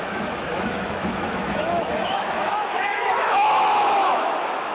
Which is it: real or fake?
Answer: fake